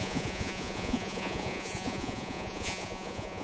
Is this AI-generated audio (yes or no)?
yes